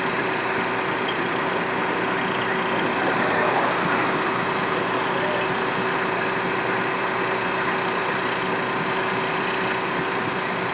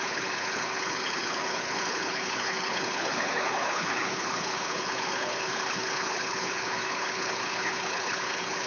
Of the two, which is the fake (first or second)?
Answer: second